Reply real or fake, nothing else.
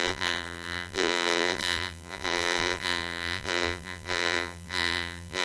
fake